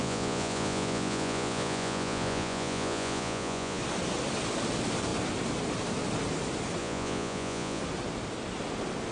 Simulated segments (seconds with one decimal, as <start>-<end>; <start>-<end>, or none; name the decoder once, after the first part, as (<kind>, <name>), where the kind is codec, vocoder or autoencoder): 0.0-3.8 (vocoder, Vocos); 6.8-7.8